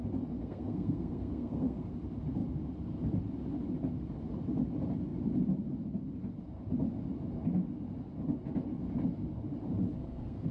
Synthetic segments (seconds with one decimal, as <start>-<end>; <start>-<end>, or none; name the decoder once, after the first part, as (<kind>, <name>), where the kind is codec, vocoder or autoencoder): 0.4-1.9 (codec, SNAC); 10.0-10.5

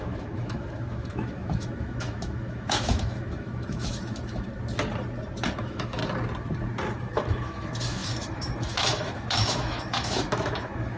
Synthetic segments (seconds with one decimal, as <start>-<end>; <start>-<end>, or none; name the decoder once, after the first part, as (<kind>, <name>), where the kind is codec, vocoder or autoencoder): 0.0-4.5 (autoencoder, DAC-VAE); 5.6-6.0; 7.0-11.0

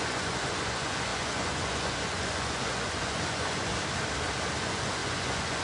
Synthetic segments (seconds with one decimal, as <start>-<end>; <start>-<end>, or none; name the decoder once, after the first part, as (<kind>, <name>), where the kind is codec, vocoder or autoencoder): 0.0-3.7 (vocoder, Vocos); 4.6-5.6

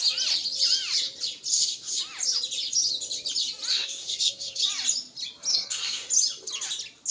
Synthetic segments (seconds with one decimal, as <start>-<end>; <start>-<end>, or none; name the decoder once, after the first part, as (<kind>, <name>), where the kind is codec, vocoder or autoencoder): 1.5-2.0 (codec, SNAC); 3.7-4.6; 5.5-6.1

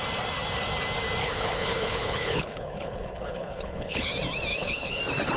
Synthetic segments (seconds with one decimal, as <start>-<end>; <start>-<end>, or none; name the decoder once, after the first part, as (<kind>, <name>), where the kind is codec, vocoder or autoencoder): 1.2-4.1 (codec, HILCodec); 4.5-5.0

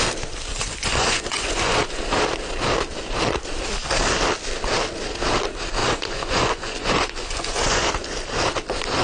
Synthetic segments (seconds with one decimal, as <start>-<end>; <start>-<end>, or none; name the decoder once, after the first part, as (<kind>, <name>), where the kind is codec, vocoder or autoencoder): 0.5-2.0 (vocoder, Vocos); 5.8-7.9